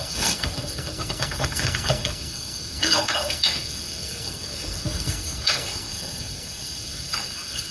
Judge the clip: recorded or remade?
remade